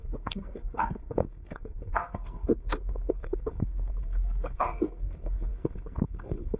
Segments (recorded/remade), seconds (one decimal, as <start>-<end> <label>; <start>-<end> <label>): 0.0-6.6 remade